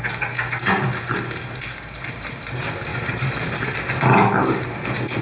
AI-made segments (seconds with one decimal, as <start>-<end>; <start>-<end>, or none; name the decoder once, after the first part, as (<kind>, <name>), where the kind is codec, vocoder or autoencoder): 2.9-3.6 (vocoder, BigVGAN v2)